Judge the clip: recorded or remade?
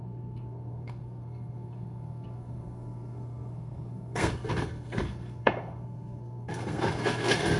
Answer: remade